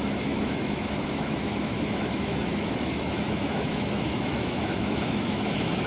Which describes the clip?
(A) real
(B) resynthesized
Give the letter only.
B